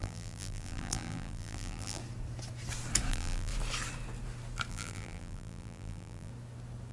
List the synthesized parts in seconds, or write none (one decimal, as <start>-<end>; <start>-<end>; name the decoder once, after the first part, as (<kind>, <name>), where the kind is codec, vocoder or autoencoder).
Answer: 0.0-2.0 (vocoder, BigVGAN v2); 3.1-3.5; 4.7-6.3